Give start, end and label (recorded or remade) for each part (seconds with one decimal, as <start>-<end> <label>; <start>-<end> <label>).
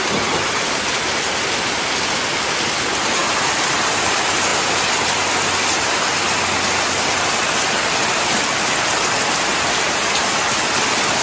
0.0-11.2 recorded